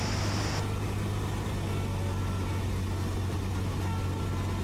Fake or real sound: real